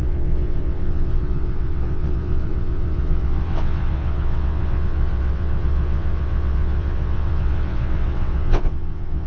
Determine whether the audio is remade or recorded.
remade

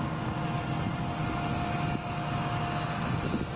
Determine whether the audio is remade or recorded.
recorded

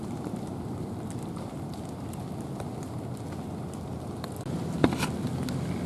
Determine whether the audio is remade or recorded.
recorded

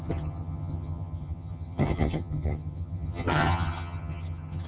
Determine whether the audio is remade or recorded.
remade